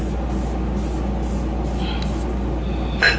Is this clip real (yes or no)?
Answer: yes